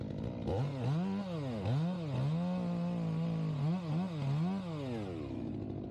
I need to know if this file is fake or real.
real